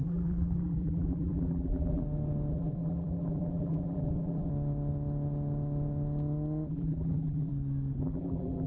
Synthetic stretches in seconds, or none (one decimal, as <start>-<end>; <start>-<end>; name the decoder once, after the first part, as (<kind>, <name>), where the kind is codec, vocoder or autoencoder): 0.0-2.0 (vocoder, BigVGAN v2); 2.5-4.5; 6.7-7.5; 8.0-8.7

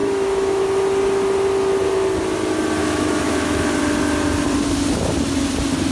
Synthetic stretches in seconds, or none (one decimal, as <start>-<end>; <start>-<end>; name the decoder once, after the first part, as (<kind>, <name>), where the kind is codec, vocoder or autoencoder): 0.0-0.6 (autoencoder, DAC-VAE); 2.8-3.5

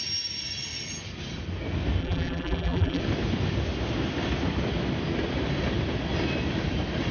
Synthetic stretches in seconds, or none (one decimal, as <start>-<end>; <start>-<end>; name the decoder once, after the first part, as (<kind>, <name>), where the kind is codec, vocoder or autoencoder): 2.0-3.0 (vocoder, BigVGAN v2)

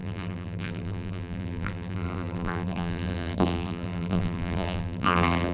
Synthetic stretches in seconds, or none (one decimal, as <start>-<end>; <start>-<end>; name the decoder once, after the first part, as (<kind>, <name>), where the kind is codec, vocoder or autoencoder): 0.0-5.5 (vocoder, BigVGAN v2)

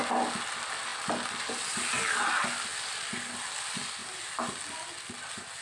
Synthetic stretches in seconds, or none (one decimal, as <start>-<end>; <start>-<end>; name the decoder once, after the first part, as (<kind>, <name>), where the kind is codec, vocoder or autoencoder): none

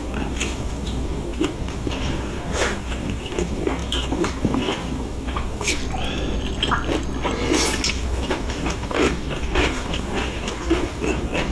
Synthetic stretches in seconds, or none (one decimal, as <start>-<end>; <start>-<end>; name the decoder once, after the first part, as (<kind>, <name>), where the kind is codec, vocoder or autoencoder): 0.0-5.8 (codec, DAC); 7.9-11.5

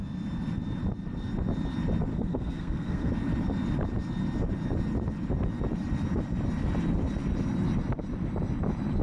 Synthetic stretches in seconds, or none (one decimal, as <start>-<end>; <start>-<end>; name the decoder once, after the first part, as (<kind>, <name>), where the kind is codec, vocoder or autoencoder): 2.1-3.1 (codec, SNAC)

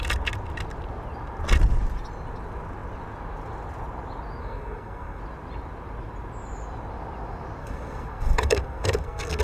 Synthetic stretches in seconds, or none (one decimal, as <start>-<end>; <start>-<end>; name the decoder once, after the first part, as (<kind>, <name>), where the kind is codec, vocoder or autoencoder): 4.4-5.2 (codec, SNAC); 7.6-9.4